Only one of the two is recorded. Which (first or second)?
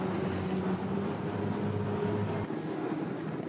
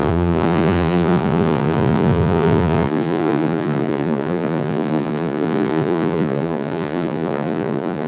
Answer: first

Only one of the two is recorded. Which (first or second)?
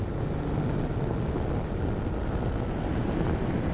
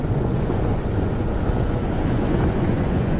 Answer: first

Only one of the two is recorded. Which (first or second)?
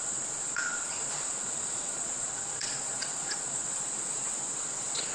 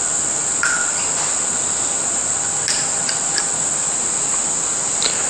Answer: second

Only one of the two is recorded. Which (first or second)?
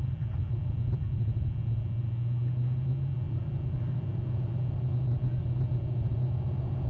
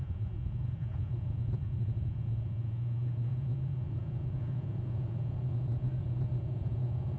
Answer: first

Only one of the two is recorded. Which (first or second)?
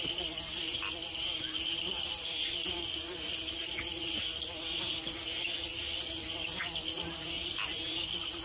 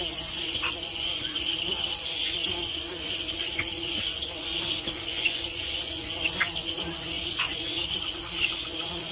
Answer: first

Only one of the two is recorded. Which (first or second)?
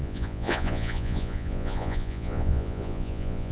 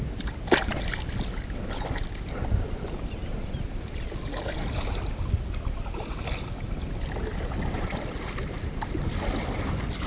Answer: second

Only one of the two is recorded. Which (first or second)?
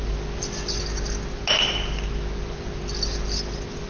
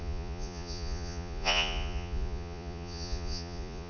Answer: first